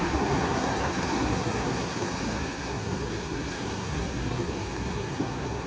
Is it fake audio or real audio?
fake